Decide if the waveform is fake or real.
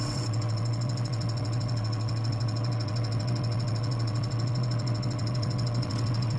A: fake